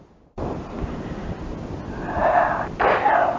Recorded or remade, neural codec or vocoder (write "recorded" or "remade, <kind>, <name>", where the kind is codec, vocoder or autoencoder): recorded